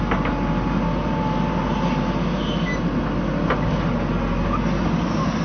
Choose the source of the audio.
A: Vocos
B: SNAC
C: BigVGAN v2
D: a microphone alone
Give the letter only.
D